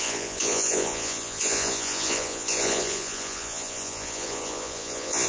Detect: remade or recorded remade